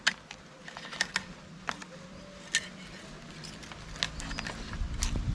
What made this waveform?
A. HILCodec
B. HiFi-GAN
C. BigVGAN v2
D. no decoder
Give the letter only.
D